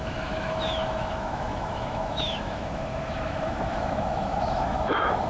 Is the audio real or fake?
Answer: fake